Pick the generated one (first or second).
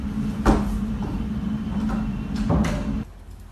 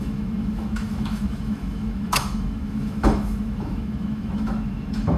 second